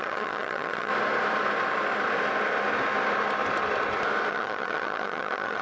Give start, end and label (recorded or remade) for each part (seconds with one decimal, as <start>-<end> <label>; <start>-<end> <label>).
0.0-0.9 remade; 0.9-4.3 recorded; 4.3-5.6 remade